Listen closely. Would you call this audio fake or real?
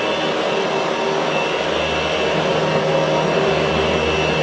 real